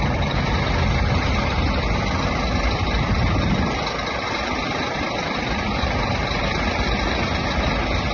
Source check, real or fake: real